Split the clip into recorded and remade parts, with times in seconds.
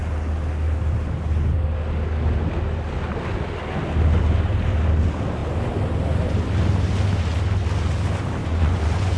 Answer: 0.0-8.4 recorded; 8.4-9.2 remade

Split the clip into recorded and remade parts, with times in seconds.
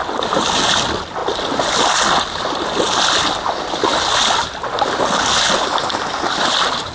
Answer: 0.0-6.9 recorded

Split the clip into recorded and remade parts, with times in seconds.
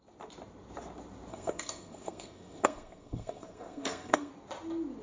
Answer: 0.0-1.3 recorded; 1.3-4.3 remade; 4.3-5.0 recorded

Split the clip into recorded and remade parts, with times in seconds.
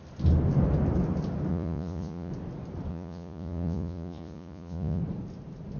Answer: 0.0-1.5 recorded; 1.5-2.3 remade; 2.3-2.9 recorded; 2.9-5.0 remade; 5.0-5.8 recorded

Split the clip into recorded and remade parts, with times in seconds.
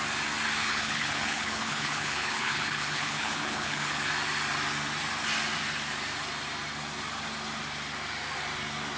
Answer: 0.0-0.6 recorded; 0.6-4.0 remade; 4.0-9.0 recorded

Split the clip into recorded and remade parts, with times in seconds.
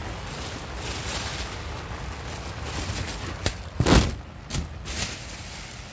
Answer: 0.0-5.9 recorded